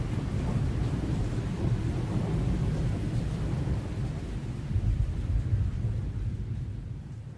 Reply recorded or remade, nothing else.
remade